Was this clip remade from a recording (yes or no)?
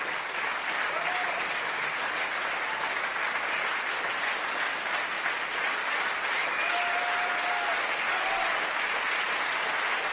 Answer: no